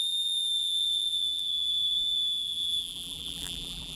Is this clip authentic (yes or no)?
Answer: no